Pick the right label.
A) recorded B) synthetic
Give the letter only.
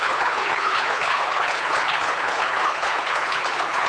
B